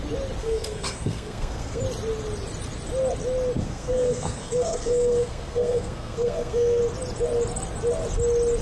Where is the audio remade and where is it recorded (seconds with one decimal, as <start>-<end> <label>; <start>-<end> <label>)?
0.0-0.4 recorded; 0.4-1.8 remade; 1.8-3.6 recorded; 3.6-6.8 remade; 6.8-8.6 recorded